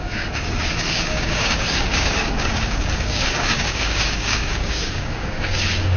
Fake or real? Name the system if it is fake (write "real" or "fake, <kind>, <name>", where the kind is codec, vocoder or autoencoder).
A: fake, codec, DAC